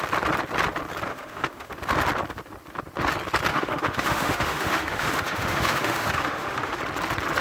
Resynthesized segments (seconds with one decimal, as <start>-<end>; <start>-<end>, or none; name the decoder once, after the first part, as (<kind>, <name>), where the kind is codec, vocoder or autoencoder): 1.1-1.7 (autoencoder, DAC-VAE); 3.5-6.8